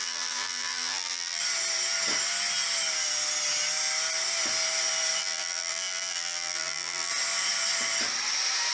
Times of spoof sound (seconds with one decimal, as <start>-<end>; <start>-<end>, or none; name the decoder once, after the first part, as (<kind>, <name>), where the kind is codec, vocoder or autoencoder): 0.0-1.4 (vocoder, BigVGAN v2); 5.2-7.1